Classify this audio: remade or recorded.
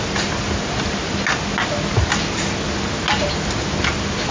recorded